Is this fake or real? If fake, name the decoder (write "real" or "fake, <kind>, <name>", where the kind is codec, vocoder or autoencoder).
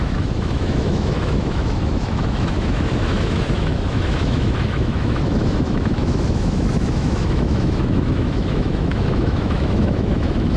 fake, autoencoder, DAC-VAE